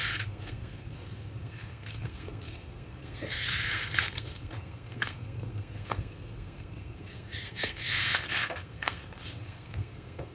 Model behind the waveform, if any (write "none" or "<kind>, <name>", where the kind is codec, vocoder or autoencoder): codec, SNAC